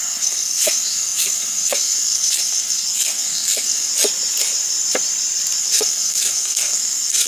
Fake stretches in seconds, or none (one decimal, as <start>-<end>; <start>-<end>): 0.0-3.9; 5.6-7.3